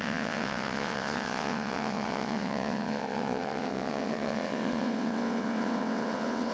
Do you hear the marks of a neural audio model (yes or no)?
yes